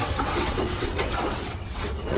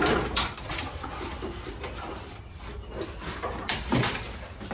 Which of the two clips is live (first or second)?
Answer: second